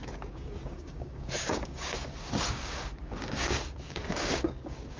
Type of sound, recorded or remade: remade